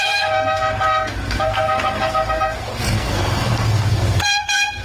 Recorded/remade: remade